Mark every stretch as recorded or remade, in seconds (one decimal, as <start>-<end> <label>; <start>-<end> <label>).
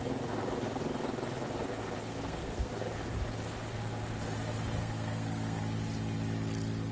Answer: 0.0-2.1 recorded; 2.1-2.7 remade; 2.7-4.8 recorded; 4.8-5.6 remade; 5.6-6.9 recorded